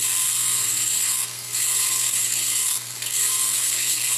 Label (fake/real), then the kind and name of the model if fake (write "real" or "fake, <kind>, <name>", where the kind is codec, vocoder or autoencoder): fake, codec, SNAC